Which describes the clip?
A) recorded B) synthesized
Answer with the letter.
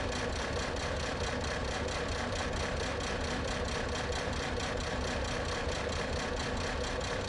B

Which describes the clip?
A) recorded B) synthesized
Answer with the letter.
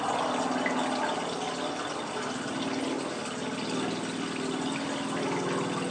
A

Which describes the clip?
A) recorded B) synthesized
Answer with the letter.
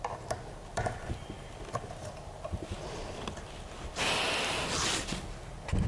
A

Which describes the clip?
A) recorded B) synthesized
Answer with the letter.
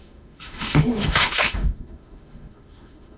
B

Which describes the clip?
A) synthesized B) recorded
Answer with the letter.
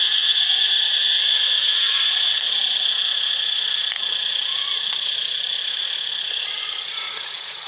A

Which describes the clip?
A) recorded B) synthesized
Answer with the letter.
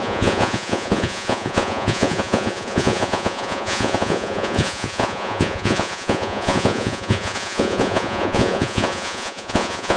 B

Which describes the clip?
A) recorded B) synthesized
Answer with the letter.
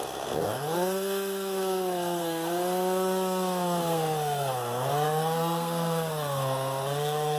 B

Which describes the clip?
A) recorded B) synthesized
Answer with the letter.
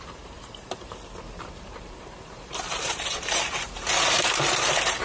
B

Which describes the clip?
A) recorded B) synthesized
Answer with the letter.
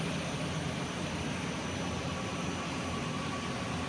A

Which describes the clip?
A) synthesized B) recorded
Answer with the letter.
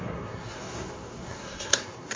A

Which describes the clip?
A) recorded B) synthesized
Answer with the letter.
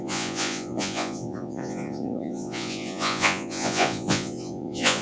B